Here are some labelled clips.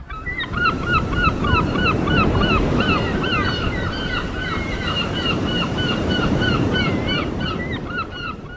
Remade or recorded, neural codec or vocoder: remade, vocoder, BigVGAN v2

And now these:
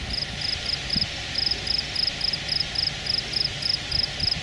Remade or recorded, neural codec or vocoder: recorded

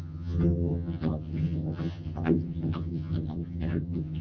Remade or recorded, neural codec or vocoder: remade, vocoder, HiFi-GAN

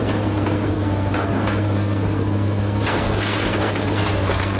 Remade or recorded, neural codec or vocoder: remade, codec, SNAC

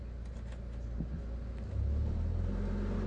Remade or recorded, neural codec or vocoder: recorded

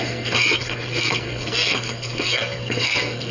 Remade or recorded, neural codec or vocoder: remade, codec, SNAC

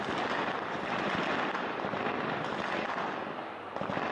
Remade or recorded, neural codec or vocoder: recorded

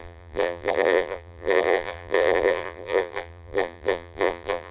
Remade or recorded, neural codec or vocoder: remade, vocoder, BigVGAN v2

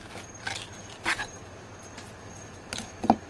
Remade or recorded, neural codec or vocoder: recorded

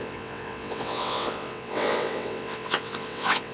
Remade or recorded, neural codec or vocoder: remade, vocoder, WaveNeXt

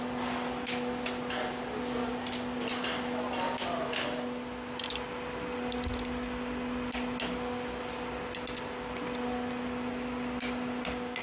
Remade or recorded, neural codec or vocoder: recorded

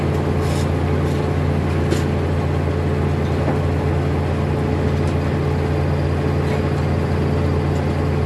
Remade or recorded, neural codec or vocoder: recorded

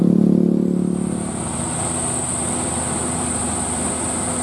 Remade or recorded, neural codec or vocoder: recorded